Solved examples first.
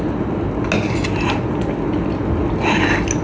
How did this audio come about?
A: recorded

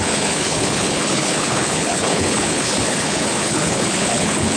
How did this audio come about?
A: remade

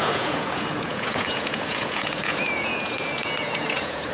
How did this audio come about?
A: remade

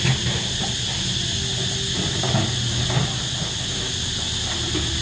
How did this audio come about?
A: recorded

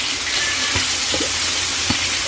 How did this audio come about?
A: recorded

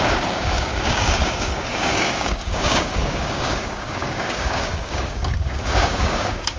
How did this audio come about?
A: remade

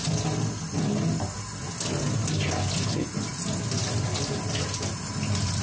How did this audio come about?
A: recorded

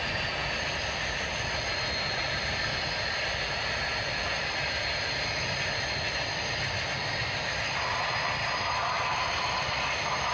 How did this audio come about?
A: recorded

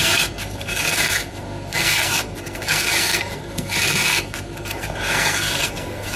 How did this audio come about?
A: remade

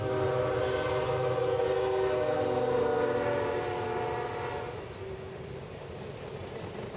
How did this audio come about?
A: recorded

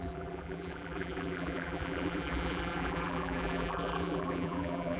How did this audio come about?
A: remade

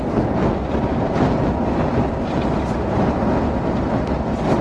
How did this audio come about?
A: recorded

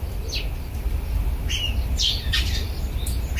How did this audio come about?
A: recorded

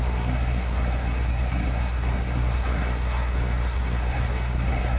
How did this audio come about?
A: remade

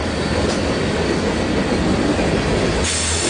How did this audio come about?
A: recorded